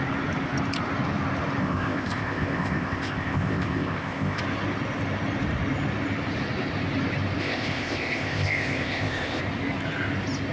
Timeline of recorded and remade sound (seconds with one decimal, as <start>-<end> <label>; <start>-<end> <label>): 0.0-1.6 recorded; 1.6-4.4 remade; 4.4-7.4 recorded; 7.4-9.4 remade; 9.4-10.5 recorded